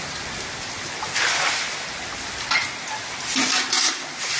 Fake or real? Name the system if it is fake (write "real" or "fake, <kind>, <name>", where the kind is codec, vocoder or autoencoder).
real